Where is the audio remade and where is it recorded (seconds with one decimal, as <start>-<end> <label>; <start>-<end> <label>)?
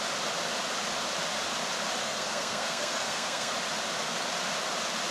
0.0-2.0 recorded; 2.0-3.5 remade; 3.5-5.1 recorded